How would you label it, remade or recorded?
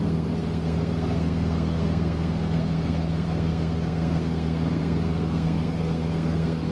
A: remade